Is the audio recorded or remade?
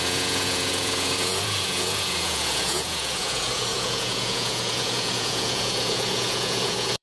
remade